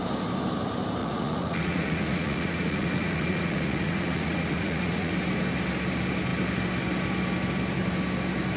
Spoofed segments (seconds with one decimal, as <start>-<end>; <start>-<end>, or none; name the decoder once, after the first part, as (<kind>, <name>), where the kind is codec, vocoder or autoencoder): 1.0-5.1 (vocoder, Vocos)